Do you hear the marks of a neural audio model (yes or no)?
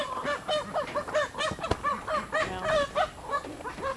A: no